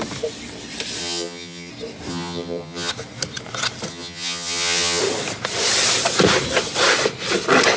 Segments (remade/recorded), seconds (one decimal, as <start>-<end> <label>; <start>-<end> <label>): 0.0-1.0 recorded; 1.0-1.7 remade; 1.7-2.1 recorded; 2.1-2.9 remade; 2.9-3.9 recorded; 3.9-5.0 remade; 5.0-7.8 recorded